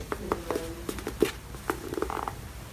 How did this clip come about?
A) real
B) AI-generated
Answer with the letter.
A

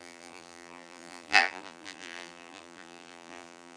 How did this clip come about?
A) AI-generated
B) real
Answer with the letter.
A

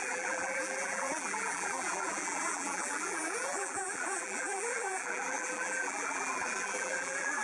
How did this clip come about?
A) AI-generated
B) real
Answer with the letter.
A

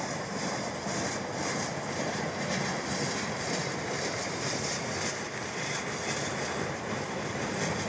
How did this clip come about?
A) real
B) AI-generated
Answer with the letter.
A